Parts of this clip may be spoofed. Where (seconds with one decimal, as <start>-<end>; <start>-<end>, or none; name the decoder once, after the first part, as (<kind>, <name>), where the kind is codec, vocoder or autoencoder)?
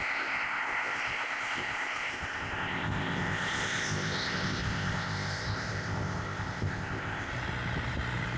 0.0-7.3 (codec, ZipCodec)